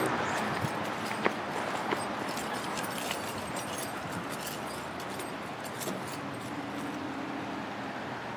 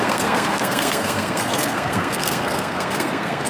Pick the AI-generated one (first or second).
second